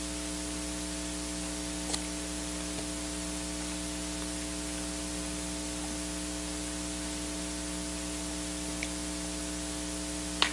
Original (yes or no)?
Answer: yes